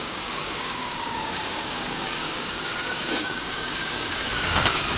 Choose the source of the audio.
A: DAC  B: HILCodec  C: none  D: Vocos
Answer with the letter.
A